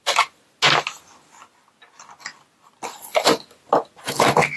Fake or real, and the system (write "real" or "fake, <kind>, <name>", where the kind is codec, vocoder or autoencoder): real